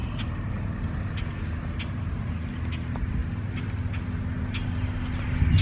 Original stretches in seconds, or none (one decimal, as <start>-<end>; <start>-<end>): 0.0-5.6